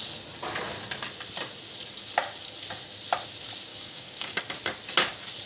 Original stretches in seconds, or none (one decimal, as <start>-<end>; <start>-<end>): 0.0-3.7; 4.4-5.5